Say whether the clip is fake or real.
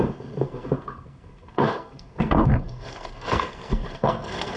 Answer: fake